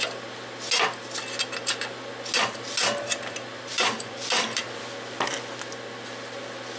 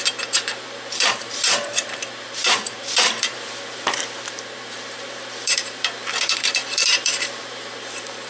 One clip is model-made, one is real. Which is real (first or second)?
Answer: first